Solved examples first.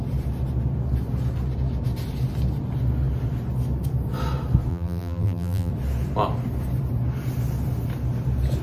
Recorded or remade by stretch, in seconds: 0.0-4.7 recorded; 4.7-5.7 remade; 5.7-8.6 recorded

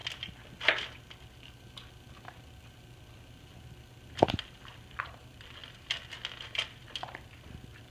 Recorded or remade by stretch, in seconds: 0.0-4.1 recorded; 4.1-5.6 remade; 5.6-6.4 recorded; 6.4-7.9 remade

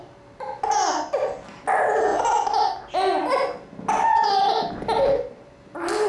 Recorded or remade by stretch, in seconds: 0.0-6.1 recorded